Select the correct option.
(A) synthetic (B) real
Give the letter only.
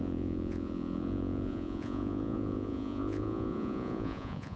A